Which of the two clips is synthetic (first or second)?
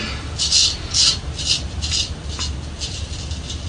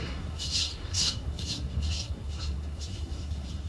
second